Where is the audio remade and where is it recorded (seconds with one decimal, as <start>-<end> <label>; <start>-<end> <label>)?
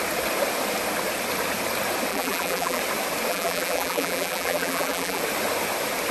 0.0-2.1 recorded; 2.1-2.8 remade; 2.8-3.3 recorded; 3.3-5.2 remade; 5.2-6.1 recorded